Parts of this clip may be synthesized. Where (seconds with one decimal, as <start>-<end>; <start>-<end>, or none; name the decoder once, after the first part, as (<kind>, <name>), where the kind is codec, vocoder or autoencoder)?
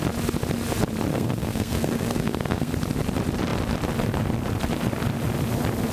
1.1-2.7 (codec, SNAC)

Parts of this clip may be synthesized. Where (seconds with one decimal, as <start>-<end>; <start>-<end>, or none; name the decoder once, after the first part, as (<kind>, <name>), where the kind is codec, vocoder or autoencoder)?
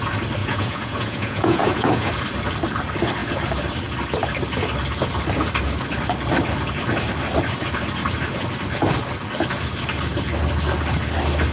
0.4-2.1 (vocoder, Vocos)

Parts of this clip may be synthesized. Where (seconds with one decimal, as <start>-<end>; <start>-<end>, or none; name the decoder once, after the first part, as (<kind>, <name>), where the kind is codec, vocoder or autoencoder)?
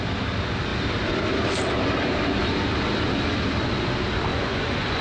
4.3-5.0 (vocoder, Vocos)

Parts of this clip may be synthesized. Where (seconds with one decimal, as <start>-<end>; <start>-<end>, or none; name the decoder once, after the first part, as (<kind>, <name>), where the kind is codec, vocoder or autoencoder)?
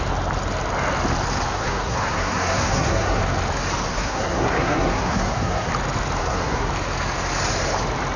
1.5-3.2 (codec, SNAC); 3.9-5.7; 6.2-6.7